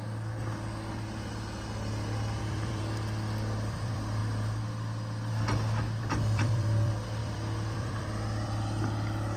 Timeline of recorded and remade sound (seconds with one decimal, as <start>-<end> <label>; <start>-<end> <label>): 0.0-2.4 recorded; 2.4-4.2 remade; 4.2-6.0 recorded; 6.0-9.4 remade